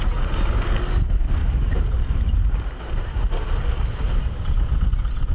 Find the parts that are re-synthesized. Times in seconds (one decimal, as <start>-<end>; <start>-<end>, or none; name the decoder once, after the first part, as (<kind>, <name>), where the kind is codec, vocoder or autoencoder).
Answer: none

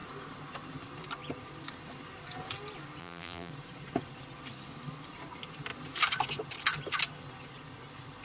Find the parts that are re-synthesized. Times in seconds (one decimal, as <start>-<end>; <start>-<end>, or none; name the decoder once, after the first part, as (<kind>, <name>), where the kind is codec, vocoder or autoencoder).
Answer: 3.0-3.5 (vocoder, BigVGAN v2)

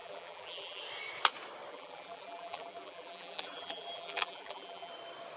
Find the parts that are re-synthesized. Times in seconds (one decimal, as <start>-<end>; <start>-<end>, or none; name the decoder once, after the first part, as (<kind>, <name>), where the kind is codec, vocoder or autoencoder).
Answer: 0.0-0.8 (vocoder, BigVGAN v2); 1.7-4.9

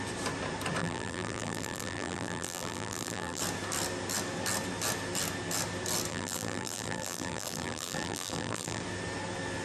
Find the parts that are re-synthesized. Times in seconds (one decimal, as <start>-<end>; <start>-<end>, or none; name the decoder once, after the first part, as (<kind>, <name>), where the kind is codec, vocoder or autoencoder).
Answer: 0.8-3.4 (vocoder, BigVGAN v2); 6.1-8.8